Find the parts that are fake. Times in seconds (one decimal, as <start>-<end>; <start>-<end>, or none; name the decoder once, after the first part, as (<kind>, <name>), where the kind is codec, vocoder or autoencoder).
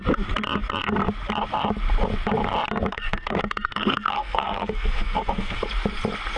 2.9-5.7 (codec, SNAC)